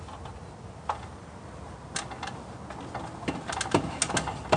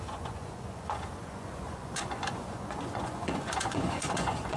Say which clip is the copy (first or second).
second